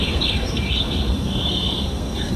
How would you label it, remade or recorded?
remade